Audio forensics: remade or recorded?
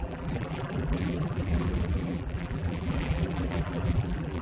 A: remade